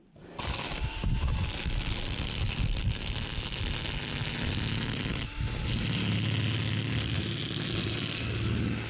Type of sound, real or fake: real